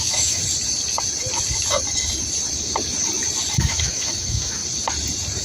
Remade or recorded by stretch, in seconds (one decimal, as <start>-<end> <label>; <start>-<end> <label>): 0.0-0.4 remade; 0.4-3.6 recorded; 3.6-4.6 remade; 4.6-5.4 recorded